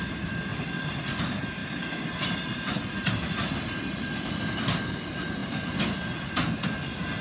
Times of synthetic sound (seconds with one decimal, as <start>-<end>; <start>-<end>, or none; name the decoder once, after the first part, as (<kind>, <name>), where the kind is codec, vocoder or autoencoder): 0.0-0.5 (vocoder, BigVGAN v2); 1.0-1.6; 3.8-5.4